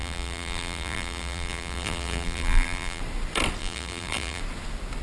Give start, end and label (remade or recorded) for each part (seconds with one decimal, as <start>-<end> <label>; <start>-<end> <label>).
0.0-3.0 remade; 3.0-3.6 recorded; 3.6-4.4 remade; 4.4-5.0 recorded